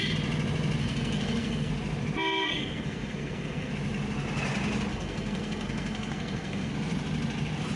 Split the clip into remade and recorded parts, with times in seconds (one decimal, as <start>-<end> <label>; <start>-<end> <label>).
0.0-0.8 recorded; 0.8-1.7 remade; 1.7-2.5 recorded; 2.5-3.7 remade; 3.7-4.9 recorded; 4.9-6.7 remade; 6.7-7.8 recorded